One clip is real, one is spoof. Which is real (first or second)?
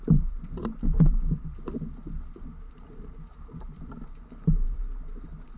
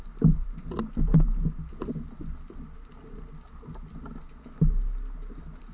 second